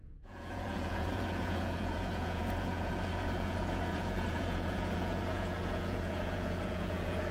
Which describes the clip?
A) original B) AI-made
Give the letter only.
B